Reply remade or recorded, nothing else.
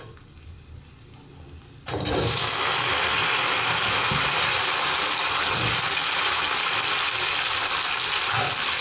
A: remade